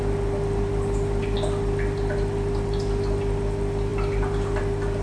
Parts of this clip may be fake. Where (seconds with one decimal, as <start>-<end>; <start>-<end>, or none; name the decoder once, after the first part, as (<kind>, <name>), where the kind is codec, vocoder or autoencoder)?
0.0-5.0 (vocoder, BigVGAN v2)